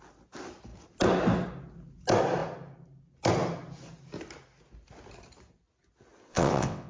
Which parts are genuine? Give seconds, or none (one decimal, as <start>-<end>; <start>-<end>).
0.0-6.3